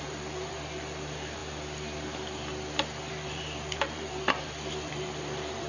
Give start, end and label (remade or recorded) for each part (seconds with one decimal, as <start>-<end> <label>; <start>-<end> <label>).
0.0-1.4 remade; 1.4-3.1 recorded; 3.1-5.7 remade